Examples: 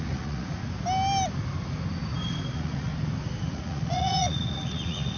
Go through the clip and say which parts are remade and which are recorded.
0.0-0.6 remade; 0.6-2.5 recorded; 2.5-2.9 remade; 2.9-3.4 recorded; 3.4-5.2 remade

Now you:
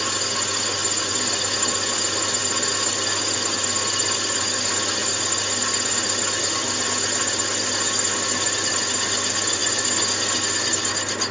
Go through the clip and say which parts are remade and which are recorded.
0.0-11.3 recorded

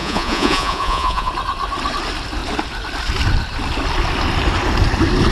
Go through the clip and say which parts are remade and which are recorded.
0.0-1.3 remade; 1.3-5.3 recorded

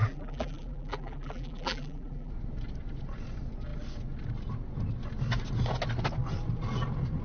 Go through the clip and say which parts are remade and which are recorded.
0.0-2.3 remade; 2.3-7.2 recorded

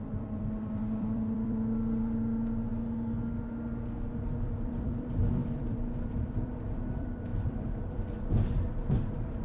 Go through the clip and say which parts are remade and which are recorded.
0.0-2.7 remade; 2.7-4.4 recorded; 4.4-9.4 remade

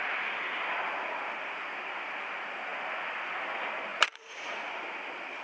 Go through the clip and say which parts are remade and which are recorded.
0.0-3.9 recorded; 3.9-4.7 remade; 4.7-5.4 recorded

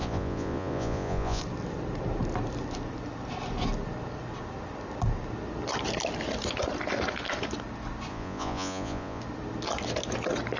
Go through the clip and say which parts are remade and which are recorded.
0.0-1.4 remade; 1.4-8.1 recorded; 8.1-9.2 remade; 9.2-10.6 recorded

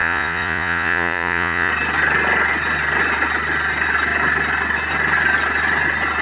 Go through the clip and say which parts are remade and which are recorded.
0.0-1.7 remade; 1.7-6.2 recorded